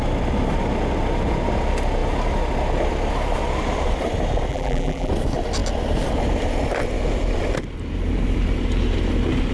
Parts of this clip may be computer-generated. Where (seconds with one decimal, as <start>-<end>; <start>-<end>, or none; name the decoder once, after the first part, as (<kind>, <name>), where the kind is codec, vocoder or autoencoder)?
4.5-5.1 (vocoder, BigVGAN v2)